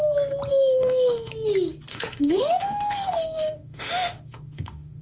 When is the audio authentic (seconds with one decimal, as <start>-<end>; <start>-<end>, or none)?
0.0-0.5; 1.3-1.9